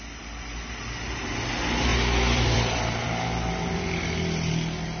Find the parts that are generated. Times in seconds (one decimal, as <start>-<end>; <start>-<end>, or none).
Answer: 1.9-4.5